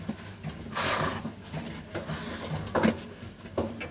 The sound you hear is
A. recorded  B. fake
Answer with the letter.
A